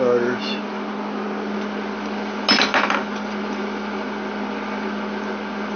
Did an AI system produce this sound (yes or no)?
no